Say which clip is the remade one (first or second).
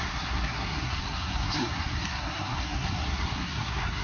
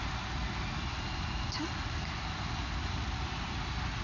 first